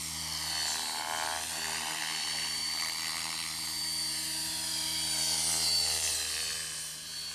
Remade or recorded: recorded